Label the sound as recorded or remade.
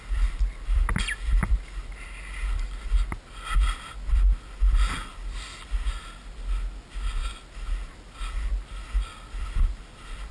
recorded